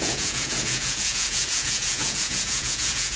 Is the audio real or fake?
fake